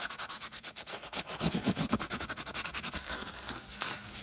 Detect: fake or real fake